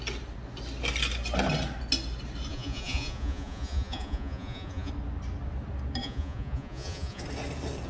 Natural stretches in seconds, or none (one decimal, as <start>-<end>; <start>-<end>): 0.0-2.5; 4.9-6.0; 7.2-7.9